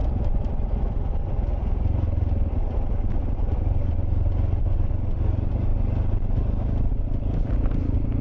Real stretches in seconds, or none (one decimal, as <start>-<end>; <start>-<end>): 0.0-8.2